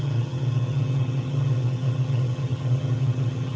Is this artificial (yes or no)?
yes